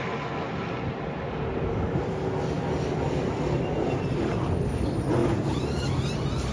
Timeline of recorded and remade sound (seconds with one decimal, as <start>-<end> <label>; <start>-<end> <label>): 0.0-5.2 recorded; 5.2-5.8 remade; 5.8-6.5 recorded